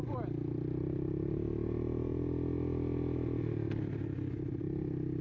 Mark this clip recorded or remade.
recorded